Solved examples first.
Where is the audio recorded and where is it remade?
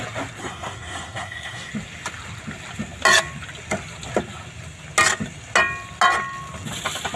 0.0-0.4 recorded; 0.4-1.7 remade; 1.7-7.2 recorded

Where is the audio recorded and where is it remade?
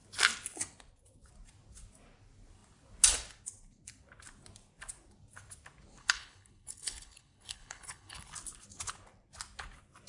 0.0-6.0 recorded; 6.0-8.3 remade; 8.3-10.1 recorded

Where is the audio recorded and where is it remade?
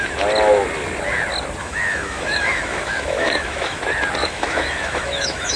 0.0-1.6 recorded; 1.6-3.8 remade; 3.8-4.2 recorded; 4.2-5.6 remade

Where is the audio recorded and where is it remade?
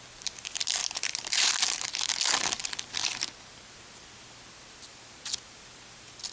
0.0-6.3 recorded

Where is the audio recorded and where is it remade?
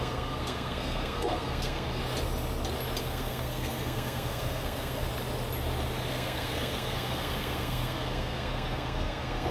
0.0-2.0 remade; 2.0-3.0 recorded; 3.0-5.1 remade; 5.1-6.1 recorded; 6.1-9.5 remade